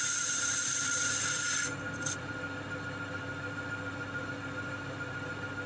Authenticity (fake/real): fake